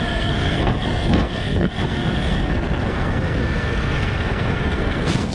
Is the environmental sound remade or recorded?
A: remade